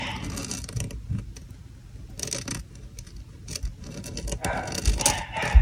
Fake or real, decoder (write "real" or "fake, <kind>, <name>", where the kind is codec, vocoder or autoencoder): real